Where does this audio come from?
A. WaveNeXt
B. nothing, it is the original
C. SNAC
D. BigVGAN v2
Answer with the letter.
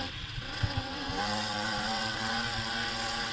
A